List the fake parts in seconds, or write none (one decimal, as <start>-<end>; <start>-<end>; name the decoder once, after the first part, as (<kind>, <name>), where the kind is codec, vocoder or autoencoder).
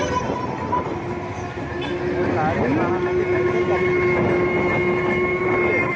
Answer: none